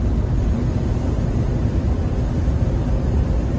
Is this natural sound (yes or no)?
yes